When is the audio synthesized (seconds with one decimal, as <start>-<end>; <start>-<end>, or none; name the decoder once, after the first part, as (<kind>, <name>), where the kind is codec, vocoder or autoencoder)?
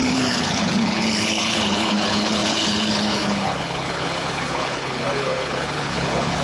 0.0-6.4 (codec, HILCodec)